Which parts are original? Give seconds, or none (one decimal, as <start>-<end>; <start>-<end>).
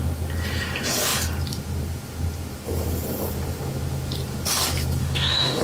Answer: 0.0-5.0